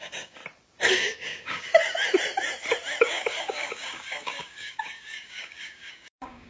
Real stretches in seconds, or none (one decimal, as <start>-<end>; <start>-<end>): 0.4-1.0; 1.7-3.0